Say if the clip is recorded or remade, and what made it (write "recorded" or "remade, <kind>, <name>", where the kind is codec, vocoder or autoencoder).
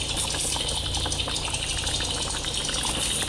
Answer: recorded